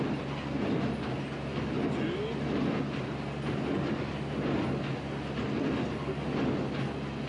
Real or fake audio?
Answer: real